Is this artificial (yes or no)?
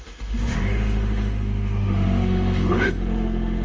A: yes